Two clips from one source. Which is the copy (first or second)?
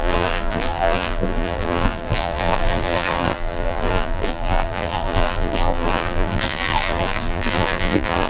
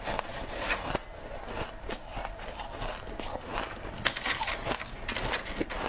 first